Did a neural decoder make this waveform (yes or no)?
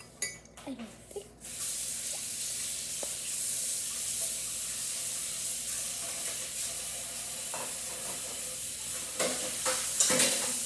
no